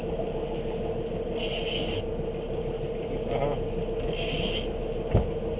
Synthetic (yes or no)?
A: no